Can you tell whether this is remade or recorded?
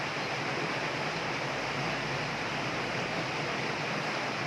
recorded